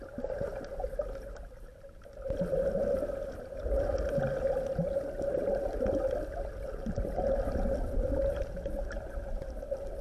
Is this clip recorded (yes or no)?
yes